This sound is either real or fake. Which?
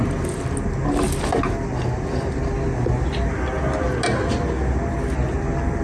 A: real